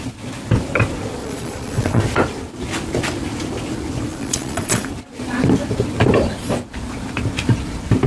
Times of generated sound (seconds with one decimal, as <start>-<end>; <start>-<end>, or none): 1.2-2.0; 4.1-4.9